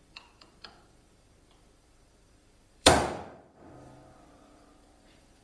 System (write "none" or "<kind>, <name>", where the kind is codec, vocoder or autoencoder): vocoder, BigVGAN v2